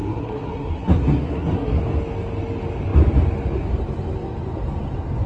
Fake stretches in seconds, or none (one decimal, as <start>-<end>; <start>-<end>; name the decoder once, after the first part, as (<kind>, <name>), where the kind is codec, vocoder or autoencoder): 0.0-1.8 (codec, SNAC)